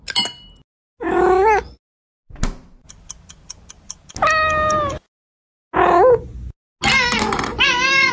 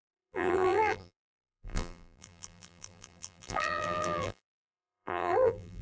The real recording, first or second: first